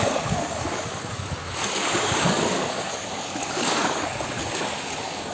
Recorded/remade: remade